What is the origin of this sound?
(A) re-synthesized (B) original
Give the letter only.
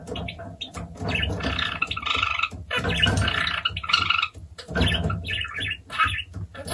B